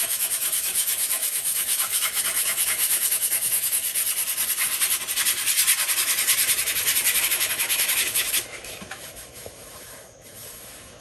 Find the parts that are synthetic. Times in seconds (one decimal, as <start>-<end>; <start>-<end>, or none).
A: 0.0-3.8; 7.2-11.0